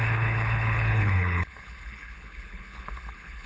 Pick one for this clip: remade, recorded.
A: remade